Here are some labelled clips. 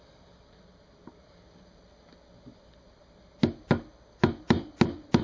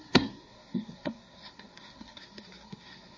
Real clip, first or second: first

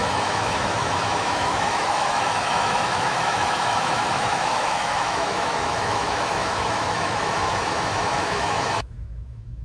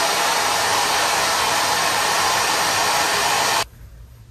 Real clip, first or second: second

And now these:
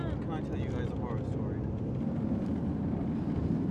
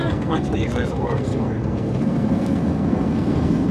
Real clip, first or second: first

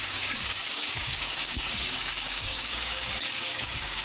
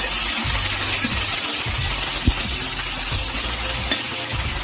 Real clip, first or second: second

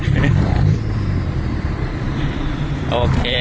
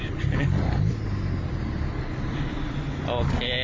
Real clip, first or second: second